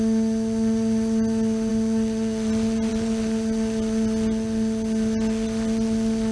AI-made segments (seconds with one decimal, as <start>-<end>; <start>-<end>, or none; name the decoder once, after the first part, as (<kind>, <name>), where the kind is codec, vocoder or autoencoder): none

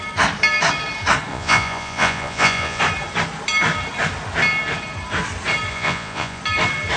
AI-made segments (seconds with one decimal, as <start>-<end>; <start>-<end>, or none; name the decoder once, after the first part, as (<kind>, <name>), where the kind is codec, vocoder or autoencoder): 1.3-2.8 (vocoder, Vocos); 5.7-6.4

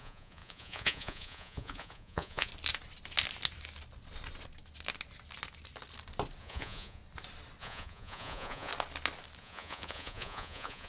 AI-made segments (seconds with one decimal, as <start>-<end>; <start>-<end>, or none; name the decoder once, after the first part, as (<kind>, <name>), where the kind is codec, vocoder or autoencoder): 0.0-2.5 (vocoder, Vocos); 6.4-7.0; 7.6-8.7; 9.4-10.9

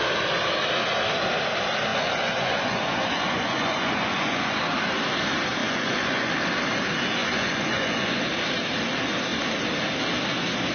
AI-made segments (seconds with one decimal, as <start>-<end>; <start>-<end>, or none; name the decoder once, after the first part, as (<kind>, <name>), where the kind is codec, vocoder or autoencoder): 1.9-4.6 (vocoder, Vocos); 5.6-6.3; 7.2-8.2

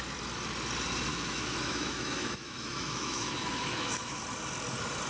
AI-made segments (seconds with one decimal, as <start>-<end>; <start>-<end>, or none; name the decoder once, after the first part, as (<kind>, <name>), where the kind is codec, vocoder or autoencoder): 1.1-4.2 (autoencoder, DAC-VAE)

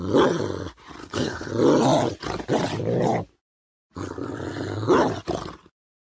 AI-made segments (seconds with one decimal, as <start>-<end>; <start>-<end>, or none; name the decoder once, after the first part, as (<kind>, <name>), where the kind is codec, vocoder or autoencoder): 1.0-1.5 (codec, HILCodec)

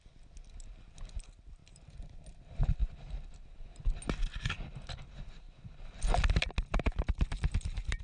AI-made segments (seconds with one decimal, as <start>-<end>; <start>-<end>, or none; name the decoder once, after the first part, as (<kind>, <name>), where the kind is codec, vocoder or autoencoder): 1.6-2.2 (vocoder, BigVGAN v2); 6.7-8.0